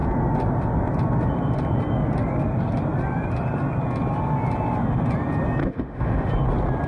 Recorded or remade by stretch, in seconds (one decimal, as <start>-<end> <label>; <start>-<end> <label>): 0.0-5.6 recorded; 5.6-6.3 remade; 6.3-6.9 recorded